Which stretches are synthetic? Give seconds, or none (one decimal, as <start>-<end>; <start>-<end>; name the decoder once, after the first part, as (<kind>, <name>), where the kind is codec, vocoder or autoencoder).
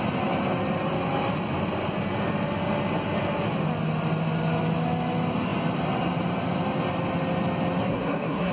7.8-8.5 (codec, SNAC)